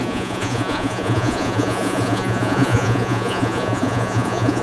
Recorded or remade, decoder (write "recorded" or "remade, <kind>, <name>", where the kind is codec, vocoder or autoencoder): remade, vocoder, Vocos